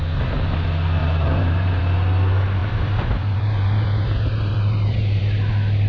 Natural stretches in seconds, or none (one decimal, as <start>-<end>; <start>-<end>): 0.0-1.0; 1.8-2.6; 5.2-5.9